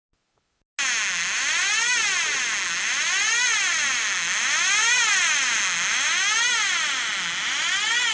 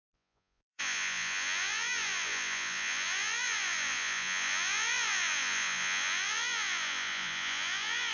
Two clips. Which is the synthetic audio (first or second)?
second